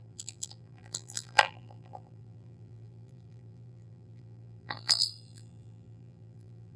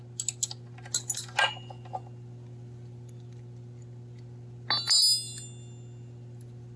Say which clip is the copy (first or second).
first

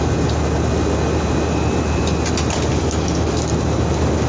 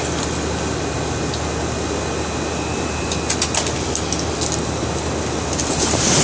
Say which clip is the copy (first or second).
first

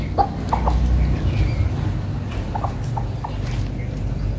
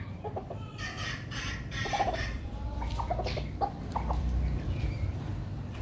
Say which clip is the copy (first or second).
second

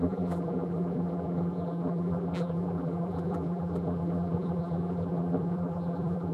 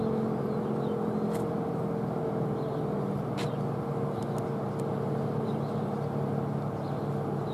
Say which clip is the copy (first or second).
first